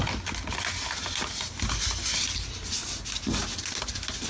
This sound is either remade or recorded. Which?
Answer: recorded